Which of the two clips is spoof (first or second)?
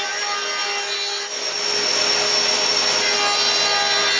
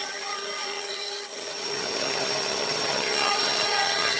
second